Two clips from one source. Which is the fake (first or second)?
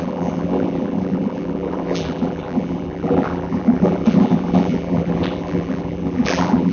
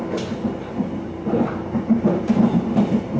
first